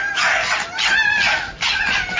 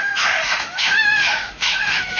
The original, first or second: first